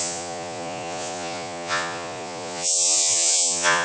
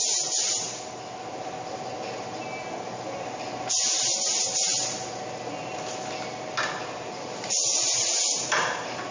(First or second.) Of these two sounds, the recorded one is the second